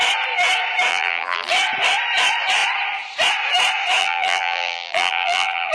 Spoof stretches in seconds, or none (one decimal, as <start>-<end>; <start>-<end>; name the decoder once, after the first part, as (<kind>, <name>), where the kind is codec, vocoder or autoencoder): 0.9-1.5 (vocoder, BigVGAN v2); 4.0-5.7